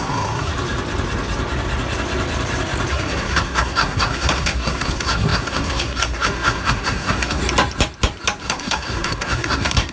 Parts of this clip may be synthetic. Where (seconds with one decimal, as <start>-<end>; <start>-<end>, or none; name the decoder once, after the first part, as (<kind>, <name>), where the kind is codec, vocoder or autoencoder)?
0.0-0.5 (codec, SNAC); 2.9-7.4; 8.4-9.9